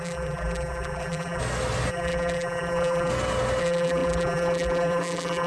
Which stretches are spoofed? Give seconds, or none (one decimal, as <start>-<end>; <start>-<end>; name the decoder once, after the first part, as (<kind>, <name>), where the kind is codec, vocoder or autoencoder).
0.0-1.4 (vocoder, BigVGAN v2); 1.9-3.1; 3.6-5.5